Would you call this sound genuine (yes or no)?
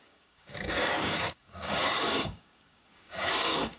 no